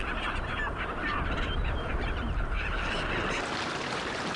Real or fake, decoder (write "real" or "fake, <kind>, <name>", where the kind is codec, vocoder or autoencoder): real